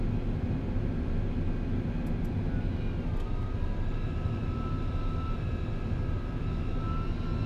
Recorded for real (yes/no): yes